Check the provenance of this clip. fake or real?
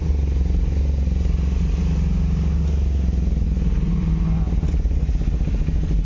real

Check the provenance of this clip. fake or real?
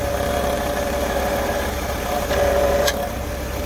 fake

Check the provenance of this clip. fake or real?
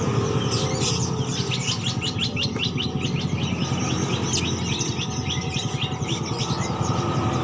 real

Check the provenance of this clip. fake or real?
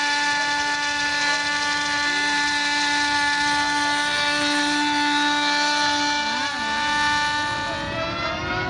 real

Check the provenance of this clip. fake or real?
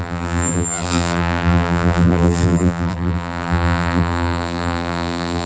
fake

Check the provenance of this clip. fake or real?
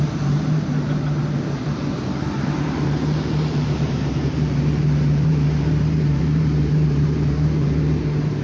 fake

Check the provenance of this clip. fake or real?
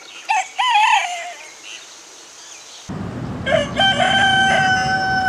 real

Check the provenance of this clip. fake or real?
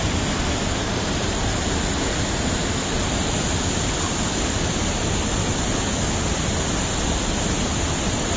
real